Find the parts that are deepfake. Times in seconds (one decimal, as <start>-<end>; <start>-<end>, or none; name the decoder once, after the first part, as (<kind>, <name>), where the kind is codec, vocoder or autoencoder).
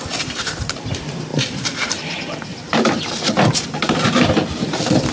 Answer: 0.0-1.3 (vocoder, BigVGAN v2); 1.9-2.5; 3.8-5.1